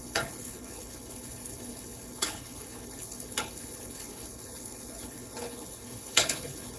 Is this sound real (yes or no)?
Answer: no